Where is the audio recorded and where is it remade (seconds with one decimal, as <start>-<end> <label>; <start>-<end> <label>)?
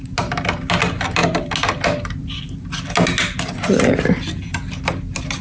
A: 0.0-5.4 recorded